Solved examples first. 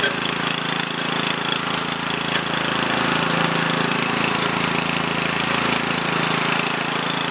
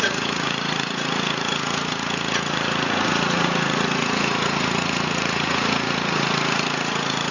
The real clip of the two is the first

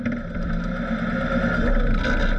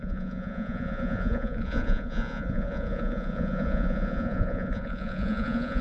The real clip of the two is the first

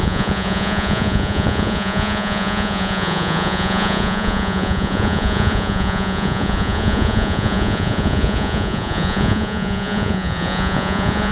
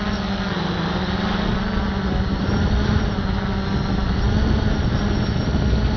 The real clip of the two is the second